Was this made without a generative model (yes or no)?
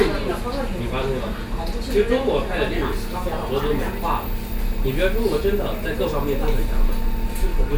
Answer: yes